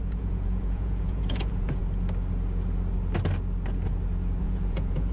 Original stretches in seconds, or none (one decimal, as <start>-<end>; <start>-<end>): 1.8-4.4